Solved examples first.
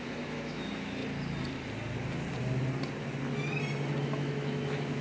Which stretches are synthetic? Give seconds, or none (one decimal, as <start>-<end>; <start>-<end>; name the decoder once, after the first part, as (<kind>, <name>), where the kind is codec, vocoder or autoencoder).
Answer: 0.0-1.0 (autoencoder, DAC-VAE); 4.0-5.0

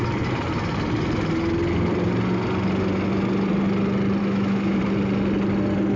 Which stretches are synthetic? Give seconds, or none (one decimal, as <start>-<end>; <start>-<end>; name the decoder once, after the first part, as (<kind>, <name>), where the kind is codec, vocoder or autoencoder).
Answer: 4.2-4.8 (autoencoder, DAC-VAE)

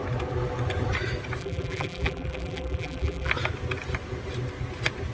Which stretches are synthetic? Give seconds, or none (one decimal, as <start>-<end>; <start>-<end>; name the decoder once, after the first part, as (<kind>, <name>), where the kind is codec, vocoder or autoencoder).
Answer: 1.4-3.3 (vocoder, BigVGAN v2)

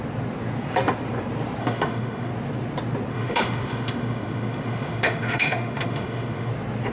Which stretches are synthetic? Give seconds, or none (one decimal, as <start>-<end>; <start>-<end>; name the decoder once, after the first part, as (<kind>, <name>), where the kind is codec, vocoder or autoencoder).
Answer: 1.6-2.3 (autoencoder, DAC-VAE); 3.1-6.5